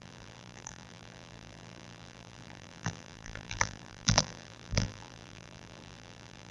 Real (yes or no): no